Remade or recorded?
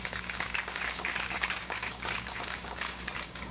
remade